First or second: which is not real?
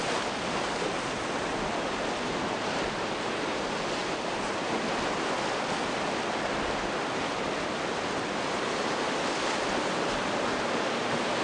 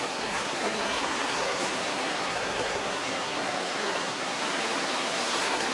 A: second